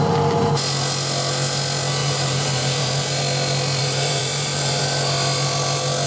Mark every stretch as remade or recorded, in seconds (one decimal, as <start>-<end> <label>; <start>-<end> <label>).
0.0-2.0 recorded; 2.0-3.2 remade; 3.2-3.8 recorded; 3.8-4.8 remade; 4.8-6.1 recorded